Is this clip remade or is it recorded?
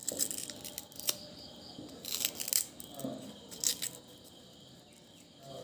recorded